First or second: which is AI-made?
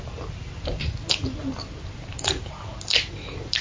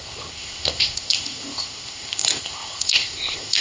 second